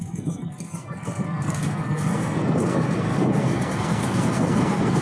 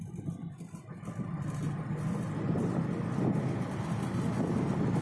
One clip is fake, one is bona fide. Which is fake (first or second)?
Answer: first